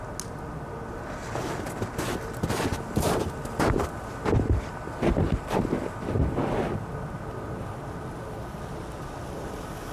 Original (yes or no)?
yes